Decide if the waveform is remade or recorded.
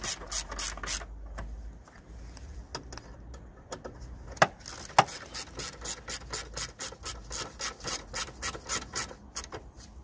recorded